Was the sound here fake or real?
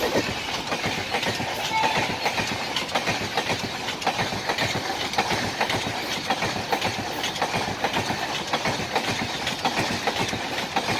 real